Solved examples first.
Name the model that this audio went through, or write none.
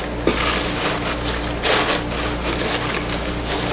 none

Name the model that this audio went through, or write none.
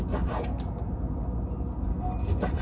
none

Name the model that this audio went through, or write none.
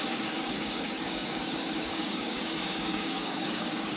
codec, DAC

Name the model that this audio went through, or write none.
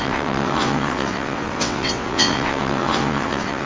vocoder, WaveNeXt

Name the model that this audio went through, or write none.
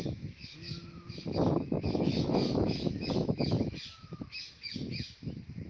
autoencoder, DAC-VAE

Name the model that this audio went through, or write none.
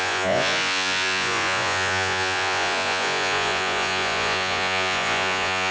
vocoder, Vocos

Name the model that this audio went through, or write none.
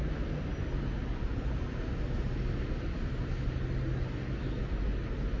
none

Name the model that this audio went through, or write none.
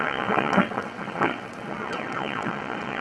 vocoder, WaveNeXt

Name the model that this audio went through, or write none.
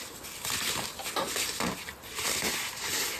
none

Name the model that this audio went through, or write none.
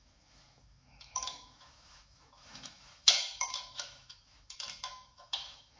autoencoder, DAC-VAE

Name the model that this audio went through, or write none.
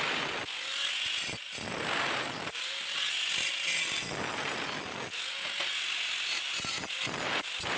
none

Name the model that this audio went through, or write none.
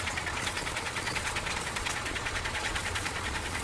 vocoder, Vocos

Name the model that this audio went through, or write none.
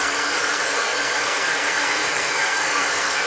codec, SNAC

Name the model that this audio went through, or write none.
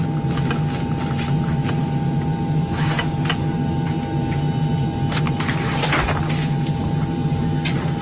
none